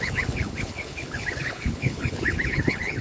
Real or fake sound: fake